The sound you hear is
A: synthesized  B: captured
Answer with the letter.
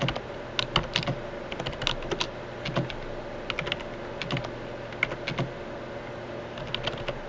B